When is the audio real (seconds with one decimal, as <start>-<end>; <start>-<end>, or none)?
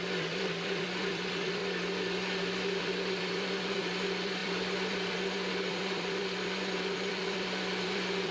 1.6-2.8